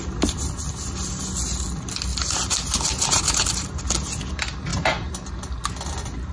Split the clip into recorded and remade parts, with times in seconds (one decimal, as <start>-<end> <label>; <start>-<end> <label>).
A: 0.0-2.1 recorded; 2.1-3.8 remade; 3.8-4.7 recorded; 4.7-5.3 remade; 5.3-6.3 recorded